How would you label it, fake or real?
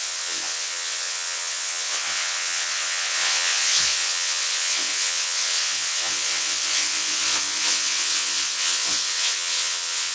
fake